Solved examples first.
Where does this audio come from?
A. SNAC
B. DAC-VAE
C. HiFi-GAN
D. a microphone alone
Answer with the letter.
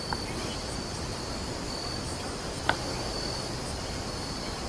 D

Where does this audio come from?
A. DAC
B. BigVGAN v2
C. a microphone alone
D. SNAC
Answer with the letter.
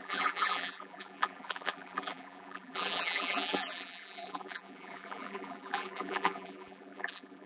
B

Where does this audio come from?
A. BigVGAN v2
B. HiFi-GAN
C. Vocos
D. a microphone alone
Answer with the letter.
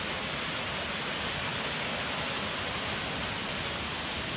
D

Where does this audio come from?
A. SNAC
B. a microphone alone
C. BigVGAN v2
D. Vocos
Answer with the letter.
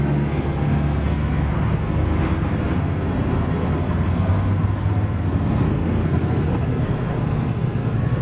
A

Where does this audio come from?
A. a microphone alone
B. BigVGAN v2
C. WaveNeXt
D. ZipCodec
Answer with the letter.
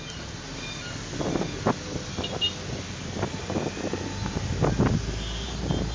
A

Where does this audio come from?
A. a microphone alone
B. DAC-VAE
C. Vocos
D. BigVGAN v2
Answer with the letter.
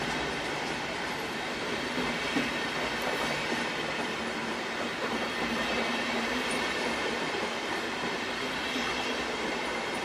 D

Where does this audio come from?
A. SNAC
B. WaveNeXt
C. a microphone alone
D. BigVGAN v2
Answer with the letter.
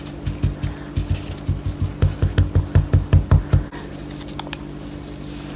C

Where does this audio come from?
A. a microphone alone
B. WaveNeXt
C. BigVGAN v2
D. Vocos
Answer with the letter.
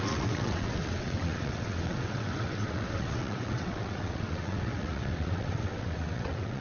B